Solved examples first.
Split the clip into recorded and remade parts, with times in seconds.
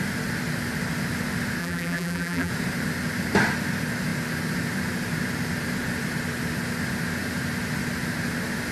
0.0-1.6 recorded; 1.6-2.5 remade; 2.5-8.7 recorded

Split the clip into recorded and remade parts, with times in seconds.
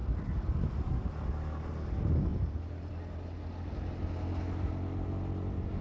0.0-1.2 remade; 1.2-2.3 recorded; 2.3-2.9 remade; 2.9-5.8 recorded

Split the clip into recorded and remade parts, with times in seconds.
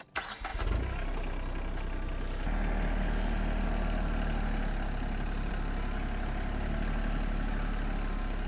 0.0-8.5 recorded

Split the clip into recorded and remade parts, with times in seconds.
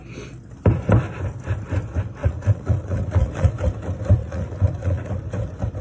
0.0-2.2 recorded; 2.2-3.5 remade; 3.5-4.2 recorded; 4.2-5.1 remade; 5.1-5.8 recorded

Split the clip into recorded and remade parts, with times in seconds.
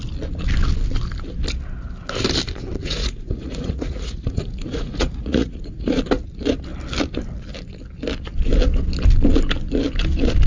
0.0-2.8 recorded; 2.8-6.0 remade; 6.0-10.5 recorded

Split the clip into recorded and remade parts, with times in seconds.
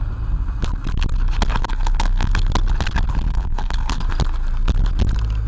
0.0-1.6 recorded; 1.6-2.3 remade; 2.3-3.3 recorded; 3.3-4.0 remade; 4.0-5.5 recorded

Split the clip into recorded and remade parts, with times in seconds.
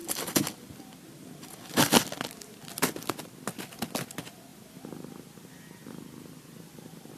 0.0-7.2 recorded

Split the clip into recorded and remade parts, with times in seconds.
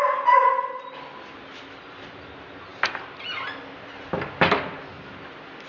0.0-5.7 recorded